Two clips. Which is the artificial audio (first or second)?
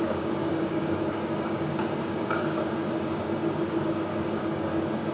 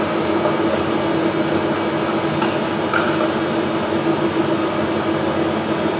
first